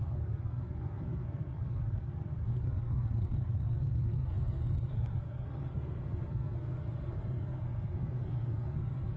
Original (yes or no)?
no